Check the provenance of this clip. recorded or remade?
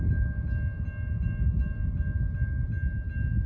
recorded